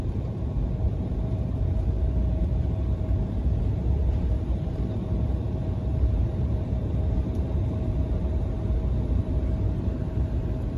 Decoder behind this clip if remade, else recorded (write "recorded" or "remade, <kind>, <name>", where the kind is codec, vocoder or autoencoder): remade, vocoder, BigVGAN v2